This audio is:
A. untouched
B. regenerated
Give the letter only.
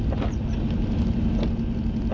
A